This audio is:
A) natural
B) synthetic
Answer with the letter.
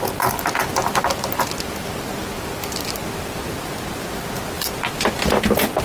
A